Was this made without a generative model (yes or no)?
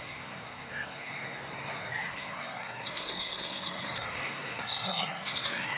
no